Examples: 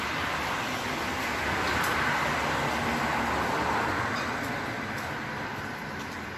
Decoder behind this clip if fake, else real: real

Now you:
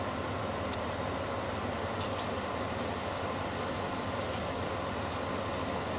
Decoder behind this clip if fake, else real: real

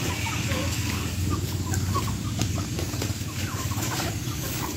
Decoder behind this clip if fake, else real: fake, codec, DAC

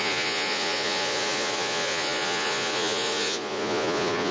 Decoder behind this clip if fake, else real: fake, vocoder, Vocos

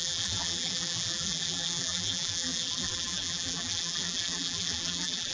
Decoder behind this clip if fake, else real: fake, vocoder, BigVGAN v2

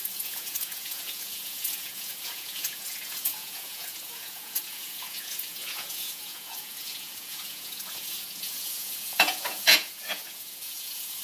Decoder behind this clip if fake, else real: fake, vocoder, Vocos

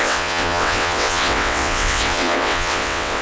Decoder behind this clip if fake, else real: fake, vocoder, WaveNeXt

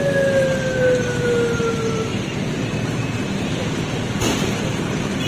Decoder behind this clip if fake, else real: real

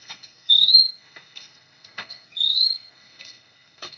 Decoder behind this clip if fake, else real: fake, codec, SNAC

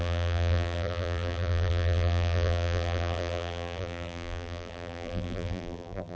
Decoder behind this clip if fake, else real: fake, vocoder, BigVGAN v2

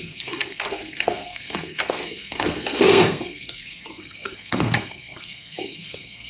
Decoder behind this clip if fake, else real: fake, codec, SNAC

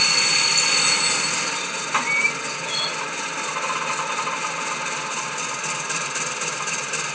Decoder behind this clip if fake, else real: real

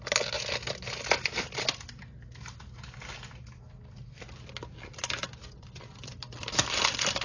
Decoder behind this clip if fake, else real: real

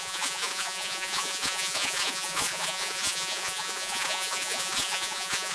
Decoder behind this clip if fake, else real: fake, vocoder, Vocos